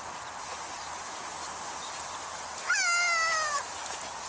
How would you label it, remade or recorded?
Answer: recorded